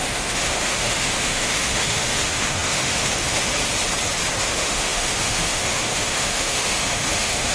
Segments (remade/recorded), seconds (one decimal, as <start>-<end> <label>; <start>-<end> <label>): 0.0-3.5 remade; 3.5-4.4 recorded; 4.4-7.5 remade